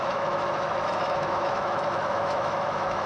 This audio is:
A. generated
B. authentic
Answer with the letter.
A